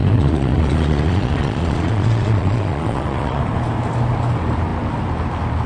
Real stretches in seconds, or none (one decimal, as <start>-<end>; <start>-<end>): 3.4-5.7